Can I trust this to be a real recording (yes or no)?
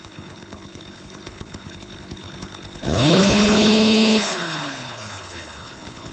no